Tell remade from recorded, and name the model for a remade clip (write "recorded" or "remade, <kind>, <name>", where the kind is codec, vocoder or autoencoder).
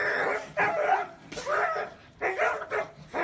recorded